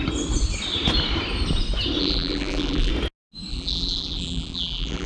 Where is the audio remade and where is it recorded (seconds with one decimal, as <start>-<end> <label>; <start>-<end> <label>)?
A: 0.0-2.0 recorded; 2.0-2.9 remade; 2.9-3.5 recorded; 3.5-5.1 remade